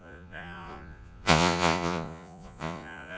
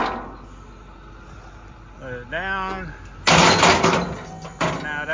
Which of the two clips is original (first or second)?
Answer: second